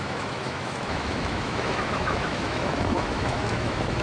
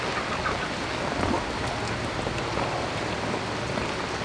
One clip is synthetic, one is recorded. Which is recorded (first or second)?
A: second